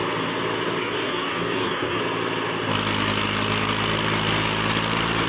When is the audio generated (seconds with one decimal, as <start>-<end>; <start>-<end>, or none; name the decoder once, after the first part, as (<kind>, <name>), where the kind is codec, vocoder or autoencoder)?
0.8-2.0 (codec, DAC)